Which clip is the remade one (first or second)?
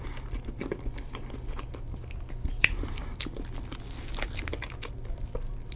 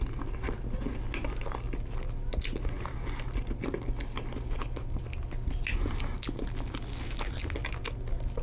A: first